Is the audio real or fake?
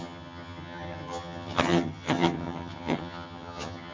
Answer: fake